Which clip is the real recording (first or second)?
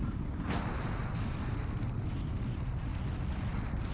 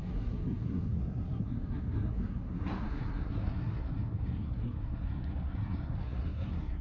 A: first